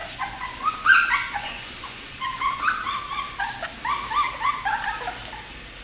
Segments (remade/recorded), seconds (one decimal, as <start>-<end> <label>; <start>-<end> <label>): 0.0-3.0 remade; 3.0-5.8 recorded